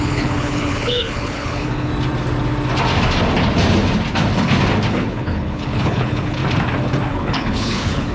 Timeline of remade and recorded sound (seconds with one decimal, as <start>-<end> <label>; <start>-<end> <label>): 0.0-1.9 remade; 1.9-4.9 recorded; 4.9-6.4 remade; 6.4-7.1 recorded; 7.1-8.1 remade